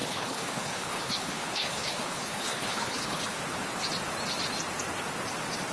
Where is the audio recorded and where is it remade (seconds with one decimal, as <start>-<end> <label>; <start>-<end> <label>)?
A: 0.0-3.4 remade; 3.4-5.7 recorded